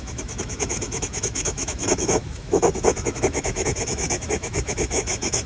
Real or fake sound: fake